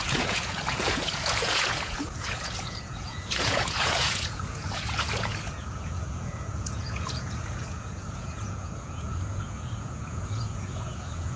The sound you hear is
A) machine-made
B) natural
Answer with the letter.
A